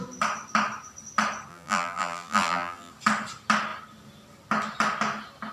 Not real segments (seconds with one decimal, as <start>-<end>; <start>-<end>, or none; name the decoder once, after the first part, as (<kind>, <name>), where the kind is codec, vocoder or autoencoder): 1.5-2.9 (vocoder, BigVGAN v2)